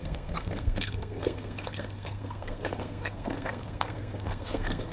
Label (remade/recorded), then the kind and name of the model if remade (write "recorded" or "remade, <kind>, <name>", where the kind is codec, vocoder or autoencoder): remade, codec, SNAC